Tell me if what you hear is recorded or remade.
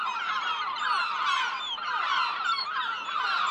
remade